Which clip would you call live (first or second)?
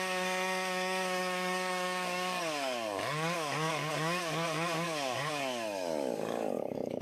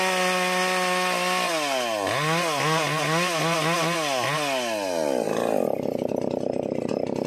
second